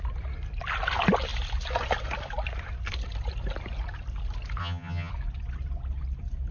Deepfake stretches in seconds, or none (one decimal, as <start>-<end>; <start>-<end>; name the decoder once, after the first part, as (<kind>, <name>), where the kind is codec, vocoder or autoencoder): 4.6-5.1 (vocoder, HiFi-GAN)